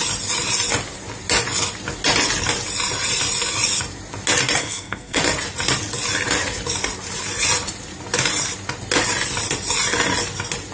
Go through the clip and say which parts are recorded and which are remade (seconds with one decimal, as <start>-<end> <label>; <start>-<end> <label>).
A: 0.0-4.6 recorded; 4.6-5.2 remade; 5.2-10.7 recorded